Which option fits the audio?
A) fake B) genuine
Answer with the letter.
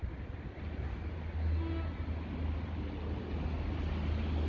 B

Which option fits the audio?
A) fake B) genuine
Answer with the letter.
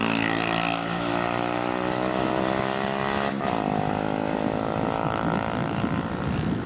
B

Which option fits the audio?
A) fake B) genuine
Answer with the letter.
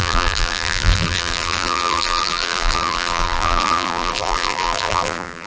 A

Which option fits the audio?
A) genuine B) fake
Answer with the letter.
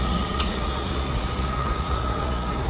B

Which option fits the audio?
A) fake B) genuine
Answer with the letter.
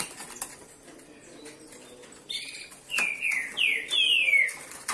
B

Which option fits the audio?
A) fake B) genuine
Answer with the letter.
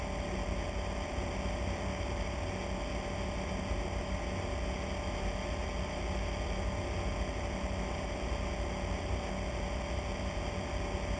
B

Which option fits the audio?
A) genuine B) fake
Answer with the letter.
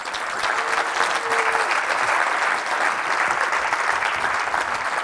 A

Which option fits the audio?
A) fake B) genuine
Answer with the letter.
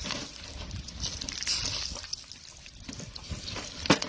B